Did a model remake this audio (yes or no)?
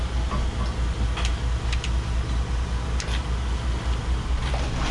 no